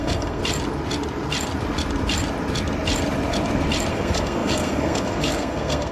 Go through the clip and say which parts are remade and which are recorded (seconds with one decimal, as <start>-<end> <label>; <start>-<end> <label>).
0.0-0.4 remade; 0.4-3.9 recorded; 3.9-5.9 remade